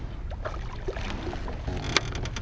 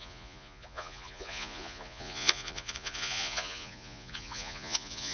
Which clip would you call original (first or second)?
first